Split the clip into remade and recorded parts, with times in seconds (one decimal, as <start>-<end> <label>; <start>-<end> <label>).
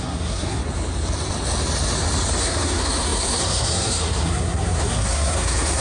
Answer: 0.0-0.6 remade; 0.6-2.4 recorded; 2.4-5.8 remade